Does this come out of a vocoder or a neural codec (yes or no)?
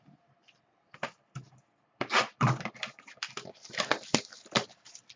yes